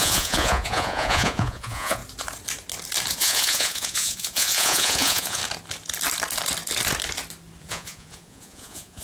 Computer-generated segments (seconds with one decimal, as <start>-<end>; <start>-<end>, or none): 0.0-2.0; 3.1-5.4; 7.6-9.0